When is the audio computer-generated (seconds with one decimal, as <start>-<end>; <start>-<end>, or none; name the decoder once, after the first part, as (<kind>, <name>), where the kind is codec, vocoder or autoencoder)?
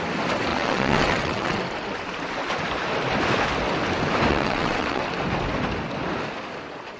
0.5-1.6 (vocoder, WaveNeXt); 4.3-5.0